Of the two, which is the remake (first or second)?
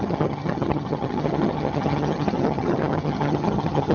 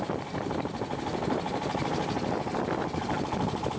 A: first